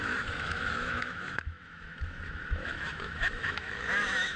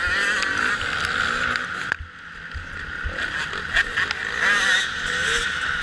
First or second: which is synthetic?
first